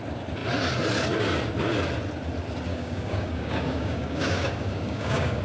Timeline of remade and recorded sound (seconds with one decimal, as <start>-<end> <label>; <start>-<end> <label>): 0.0-2.7 recorded; 2.7-5.4 remade